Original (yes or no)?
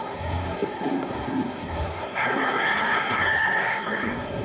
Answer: no